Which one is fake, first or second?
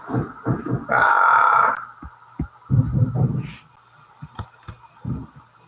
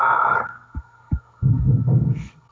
second